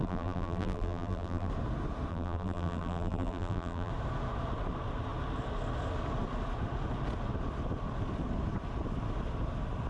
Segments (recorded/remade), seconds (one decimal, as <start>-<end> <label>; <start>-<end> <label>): 0.0-1.5 remade; 1.5-2.1 recorded; 2.1-3.9 remade; 3.9-9.9 recorded